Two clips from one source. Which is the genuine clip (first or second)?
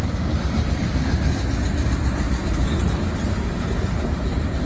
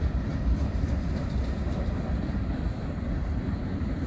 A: first